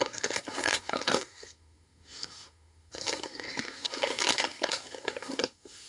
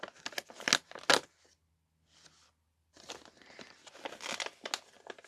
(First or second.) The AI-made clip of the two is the first